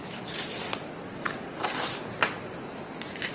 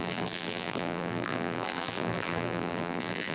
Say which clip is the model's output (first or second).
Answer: second